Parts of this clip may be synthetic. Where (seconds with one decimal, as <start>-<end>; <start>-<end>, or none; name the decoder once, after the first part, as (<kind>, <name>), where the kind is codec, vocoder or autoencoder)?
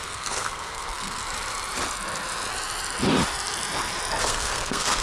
0.0-1.2 (codec, SNAC); 4.2-5.0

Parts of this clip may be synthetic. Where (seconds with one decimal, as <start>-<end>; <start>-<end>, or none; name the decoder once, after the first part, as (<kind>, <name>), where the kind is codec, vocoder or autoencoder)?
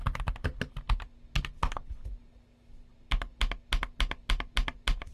none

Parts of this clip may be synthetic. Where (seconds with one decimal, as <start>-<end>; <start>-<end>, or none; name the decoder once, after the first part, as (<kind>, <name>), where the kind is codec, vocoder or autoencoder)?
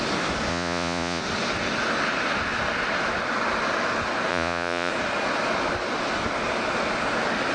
0.5-1.2 (vocoder, Vocos); 4.3-4.9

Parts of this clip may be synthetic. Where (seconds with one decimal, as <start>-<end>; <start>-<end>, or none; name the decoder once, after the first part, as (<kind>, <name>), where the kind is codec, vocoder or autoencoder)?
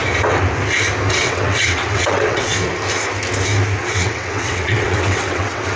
1.1-2.5 (vocoder, WaveNeXt); 3.8-5.8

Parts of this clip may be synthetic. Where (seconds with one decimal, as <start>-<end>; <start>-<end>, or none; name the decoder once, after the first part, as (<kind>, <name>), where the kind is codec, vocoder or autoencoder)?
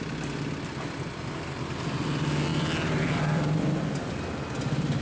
none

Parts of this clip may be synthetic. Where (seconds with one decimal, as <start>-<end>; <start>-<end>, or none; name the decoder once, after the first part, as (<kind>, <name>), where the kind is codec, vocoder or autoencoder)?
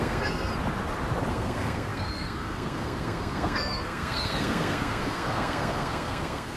0.0-0.5 (codec, SNAC); 1.3-6.6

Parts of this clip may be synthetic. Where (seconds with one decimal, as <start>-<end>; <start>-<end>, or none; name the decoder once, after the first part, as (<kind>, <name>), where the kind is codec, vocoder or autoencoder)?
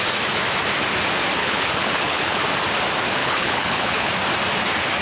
1.4-2.4 (codec, HILCodec); 3.2-4.1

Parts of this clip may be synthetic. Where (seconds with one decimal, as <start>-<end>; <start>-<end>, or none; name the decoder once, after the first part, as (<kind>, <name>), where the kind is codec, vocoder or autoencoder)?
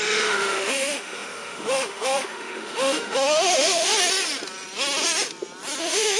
0.0-3.9 (autoencoder, DAC-VAE); 5.8-6.2